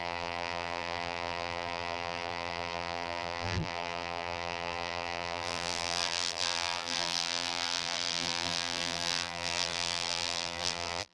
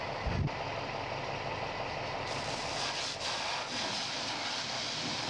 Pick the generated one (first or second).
first